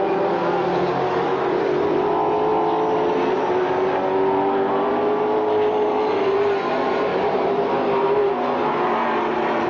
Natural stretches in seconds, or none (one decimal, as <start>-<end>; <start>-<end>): 0.0-7.1; 8.3-9.7